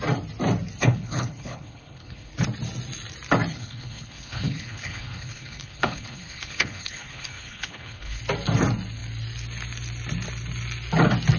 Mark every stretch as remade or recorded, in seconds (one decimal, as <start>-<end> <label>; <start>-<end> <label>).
0.0-0.8 recorded; 0.8-2.3 remade; 2.3-3.5 recorded; 3.5-8.2 remade; 8.2-11.4 recorded

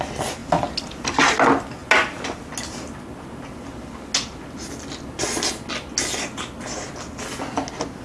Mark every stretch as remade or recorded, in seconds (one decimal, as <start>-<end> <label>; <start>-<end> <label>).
0.0-8.0 recorded

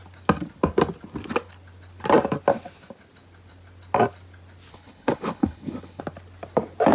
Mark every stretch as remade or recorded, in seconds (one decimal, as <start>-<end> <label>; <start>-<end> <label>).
0.0-4.7 recorded; 4.7-6.0 remade; 6.0-6.9 recorded

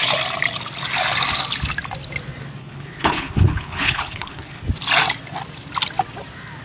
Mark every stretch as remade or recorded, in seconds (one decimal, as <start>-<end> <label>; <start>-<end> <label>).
0.0-2.6 recorded; 2.6-4.6 remade; 4.6-6.6 recorded

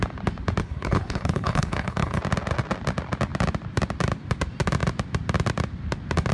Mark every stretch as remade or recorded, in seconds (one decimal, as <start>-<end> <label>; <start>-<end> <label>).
0.0-0.6 recorded; 0.6-2.2 remade; 2.2-6.3 recorded